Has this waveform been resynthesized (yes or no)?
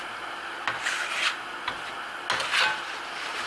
no